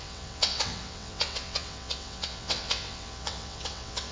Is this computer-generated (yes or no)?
yes